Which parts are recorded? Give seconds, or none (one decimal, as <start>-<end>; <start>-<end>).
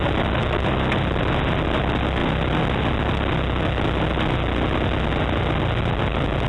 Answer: 0.0-6.5